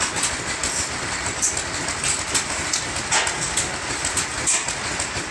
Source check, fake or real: real